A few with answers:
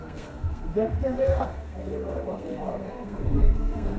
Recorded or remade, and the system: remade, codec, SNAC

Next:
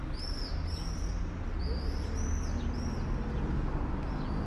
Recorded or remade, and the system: recorded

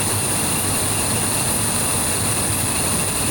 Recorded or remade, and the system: recorded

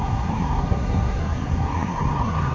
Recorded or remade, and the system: remade, codec, SNAC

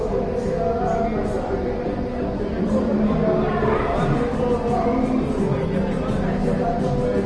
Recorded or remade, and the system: recorded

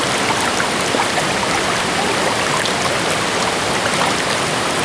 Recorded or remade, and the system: recorded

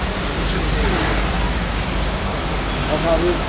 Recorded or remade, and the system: recorded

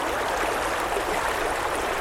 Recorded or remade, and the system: recorded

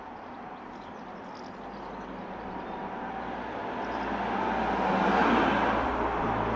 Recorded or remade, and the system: recorded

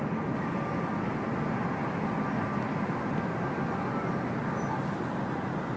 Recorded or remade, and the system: recorded